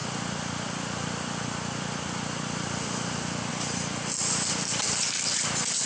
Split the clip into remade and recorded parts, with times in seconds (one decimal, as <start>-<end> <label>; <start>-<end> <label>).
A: 0.0-5.9 recorded